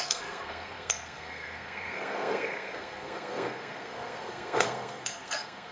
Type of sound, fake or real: fake